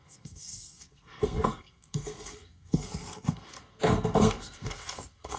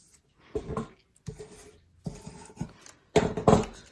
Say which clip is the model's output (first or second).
first